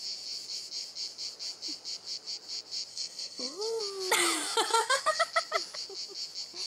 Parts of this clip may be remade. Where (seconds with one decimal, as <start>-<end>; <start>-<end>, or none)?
2.9-3.8; 4.7-5.2